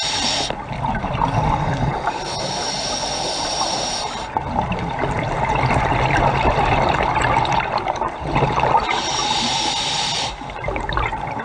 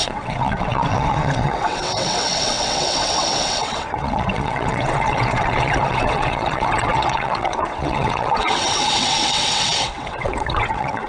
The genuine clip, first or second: first